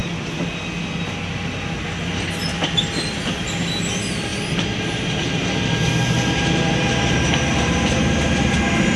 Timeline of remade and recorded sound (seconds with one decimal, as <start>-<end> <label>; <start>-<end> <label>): 0.0-9.0 recorded